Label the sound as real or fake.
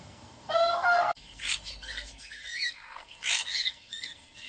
fake